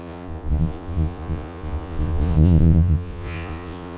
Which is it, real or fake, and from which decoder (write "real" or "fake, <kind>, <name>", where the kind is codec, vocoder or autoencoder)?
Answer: fake, vocoder, Vocos